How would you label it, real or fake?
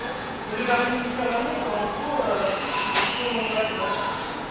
fake